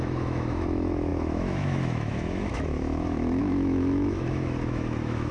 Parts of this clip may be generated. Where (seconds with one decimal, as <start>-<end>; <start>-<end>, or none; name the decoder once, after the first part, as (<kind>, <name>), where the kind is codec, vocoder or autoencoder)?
0.0-5.3 (autoencoder, DAC-VAE)